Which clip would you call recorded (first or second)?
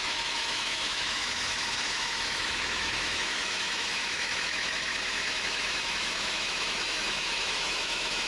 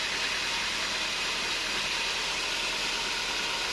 second